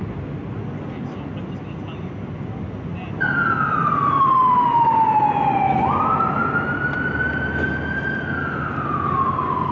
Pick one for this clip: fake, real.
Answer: real